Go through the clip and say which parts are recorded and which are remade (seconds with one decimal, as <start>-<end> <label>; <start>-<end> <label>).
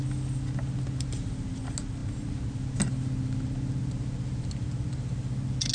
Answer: 0.0-5.7 recorded